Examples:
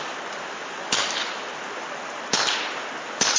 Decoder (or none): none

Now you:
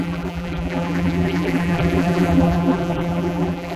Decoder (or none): vocoder, BigVGAN v2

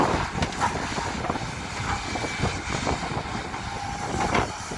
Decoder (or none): none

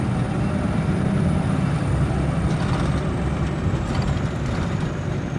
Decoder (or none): vocoder, BigVGAN v2